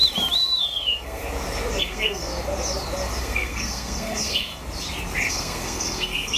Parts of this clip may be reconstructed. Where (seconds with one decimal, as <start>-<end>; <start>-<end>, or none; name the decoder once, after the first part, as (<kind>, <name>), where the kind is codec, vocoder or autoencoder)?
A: 0.6-1.2 (codec, SNAC); 1.8-2.3; 3.2-4.5; 5.3-6.4

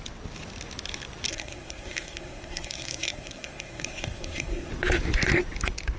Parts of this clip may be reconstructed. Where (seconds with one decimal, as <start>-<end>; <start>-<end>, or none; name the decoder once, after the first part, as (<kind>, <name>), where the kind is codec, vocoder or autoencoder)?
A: 1.3-4.7 (codec, SNAC)

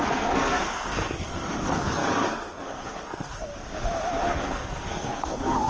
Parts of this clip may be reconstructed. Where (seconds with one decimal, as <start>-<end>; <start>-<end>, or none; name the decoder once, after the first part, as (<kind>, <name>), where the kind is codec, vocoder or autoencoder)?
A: 0.0-3.5 (codec, SNAC); 4.2-5.7

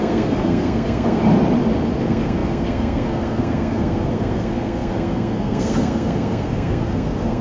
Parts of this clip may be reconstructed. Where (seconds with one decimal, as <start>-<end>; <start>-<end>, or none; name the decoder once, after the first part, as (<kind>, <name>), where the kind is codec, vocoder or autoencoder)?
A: 0.0-1.2 (codec, SNAC); 2.0-7.4

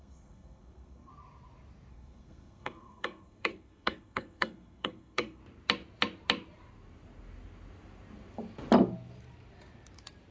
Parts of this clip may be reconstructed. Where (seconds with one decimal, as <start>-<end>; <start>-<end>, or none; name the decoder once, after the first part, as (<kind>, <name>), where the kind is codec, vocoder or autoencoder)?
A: 0.0-1.1 (codec, SNAC); 1.9-5.4